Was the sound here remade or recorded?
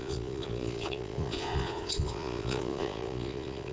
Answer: remade